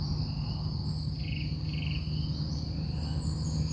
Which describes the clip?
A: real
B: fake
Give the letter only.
A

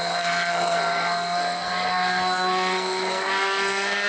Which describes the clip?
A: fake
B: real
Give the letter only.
A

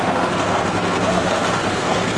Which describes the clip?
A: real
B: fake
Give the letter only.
B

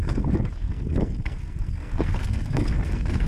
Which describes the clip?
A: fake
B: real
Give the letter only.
A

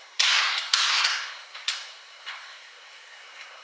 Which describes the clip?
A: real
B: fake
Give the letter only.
B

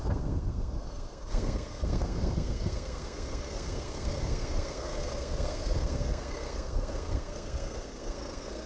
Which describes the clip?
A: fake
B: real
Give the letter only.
A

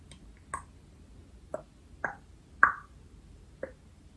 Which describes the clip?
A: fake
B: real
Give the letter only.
B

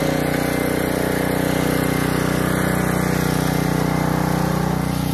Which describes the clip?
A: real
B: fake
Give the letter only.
A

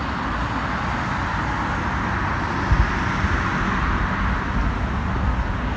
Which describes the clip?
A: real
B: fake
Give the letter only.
A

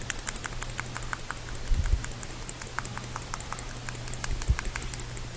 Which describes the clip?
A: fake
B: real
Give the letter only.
B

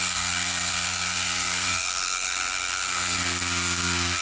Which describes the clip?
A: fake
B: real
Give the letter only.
A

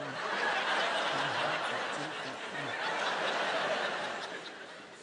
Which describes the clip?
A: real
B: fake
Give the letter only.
A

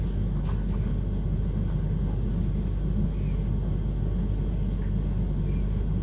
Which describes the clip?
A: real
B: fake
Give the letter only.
A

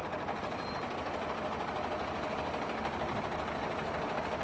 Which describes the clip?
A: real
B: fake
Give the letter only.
A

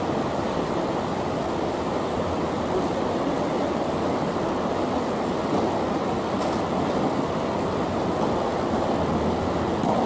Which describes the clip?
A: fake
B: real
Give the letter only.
B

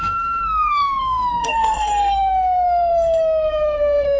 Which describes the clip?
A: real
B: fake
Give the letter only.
B